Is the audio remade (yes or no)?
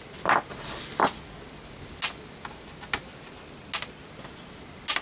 no